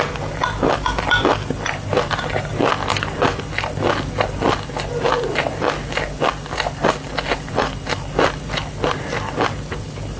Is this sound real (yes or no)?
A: yes